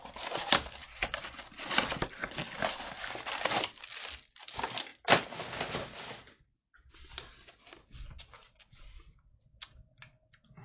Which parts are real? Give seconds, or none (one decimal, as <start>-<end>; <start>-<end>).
0.0-10.6